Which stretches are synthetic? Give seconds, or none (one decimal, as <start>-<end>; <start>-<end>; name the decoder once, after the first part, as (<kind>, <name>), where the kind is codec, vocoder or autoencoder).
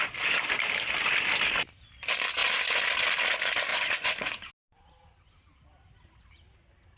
3.7-4.5 (vocoder, Vocos)